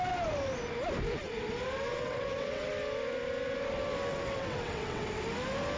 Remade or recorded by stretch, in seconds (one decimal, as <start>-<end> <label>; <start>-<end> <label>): 0.0-1.9 recorded; 1.9-2.7 remade; 2.7-4.1 recorded; 4.1-5.1 remade; 5.1-5.8 recorded